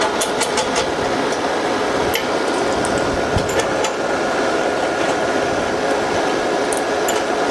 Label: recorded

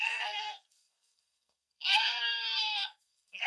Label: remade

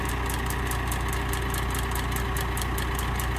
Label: recorded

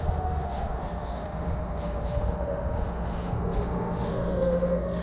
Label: remade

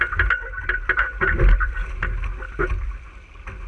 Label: recorded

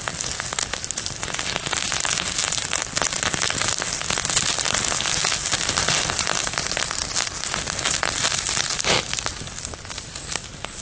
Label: recorded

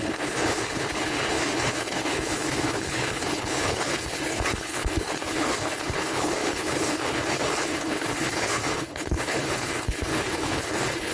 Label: remade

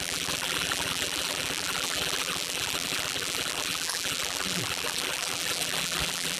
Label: remade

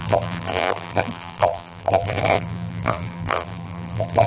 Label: remade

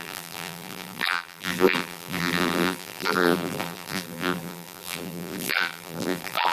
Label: remade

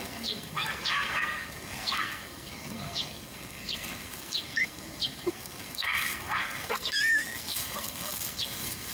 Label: remade